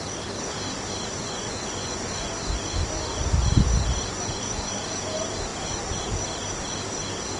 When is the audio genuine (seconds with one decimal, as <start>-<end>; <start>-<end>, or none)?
0.0-1.2; 2.3-4.1; 4.7-7.4